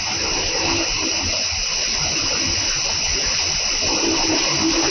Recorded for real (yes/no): yes